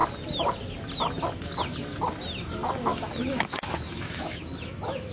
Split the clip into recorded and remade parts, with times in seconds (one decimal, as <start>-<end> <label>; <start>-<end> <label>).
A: 0.0-2.9 recorded; 2.9-5.1 remade